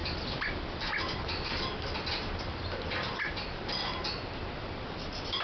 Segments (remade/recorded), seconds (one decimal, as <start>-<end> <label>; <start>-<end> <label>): 0.0-5.4 recorded